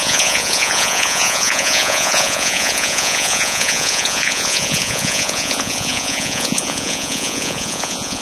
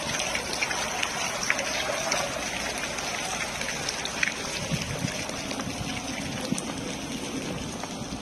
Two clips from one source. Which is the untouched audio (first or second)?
second